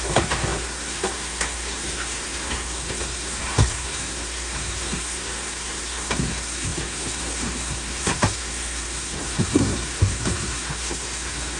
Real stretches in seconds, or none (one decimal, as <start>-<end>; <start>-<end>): none